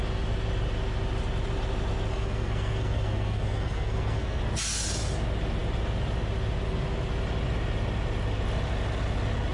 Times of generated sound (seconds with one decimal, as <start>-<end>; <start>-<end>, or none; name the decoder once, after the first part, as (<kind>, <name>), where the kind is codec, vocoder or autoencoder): 2.1-4.4 (codec, SNAC)